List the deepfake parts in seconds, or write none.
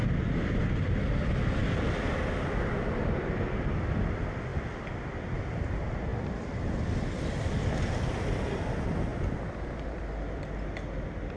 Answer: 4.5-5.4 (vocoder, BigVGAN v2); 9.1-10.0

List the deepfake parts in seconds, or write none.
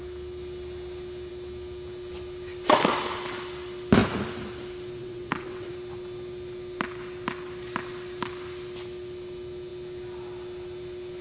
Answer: 5.0-5.7 (vocoder, WaveNeXt)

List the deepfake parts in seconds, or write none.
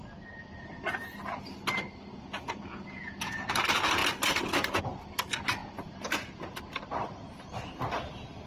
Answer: 2.1-3.5 (vocoder, Vocos); 5.6-6.6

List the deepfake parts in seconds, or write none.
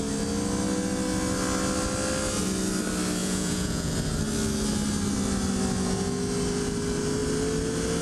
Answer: 3.2-3.9 (vocoder, Vocos)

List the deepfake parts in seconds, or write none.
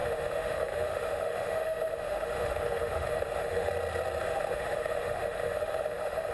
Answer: 0.0-3.7 (autoencoder, DAC-VAE); 4.2-6.3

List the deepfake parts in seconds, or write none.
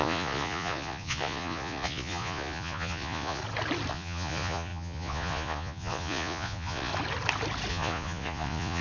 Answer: 0.0-3.4 (vocoder, Vocos); 3.9-6.9; 7.7-8.8